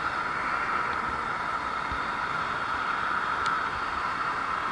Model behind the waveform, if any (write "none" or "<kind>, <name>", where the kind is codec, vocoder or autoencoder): none